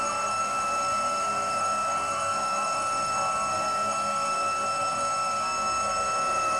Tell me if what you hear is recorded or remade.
remade